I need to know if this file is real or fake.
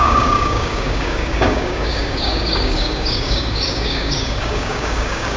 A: fake